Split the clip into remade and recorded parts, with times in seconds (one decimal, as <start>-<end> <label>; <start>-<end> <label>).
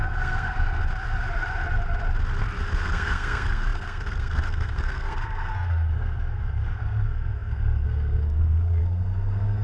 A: 0.0-0.8 remade; 0.8-2.8 recorded; 2.8-9.6 remade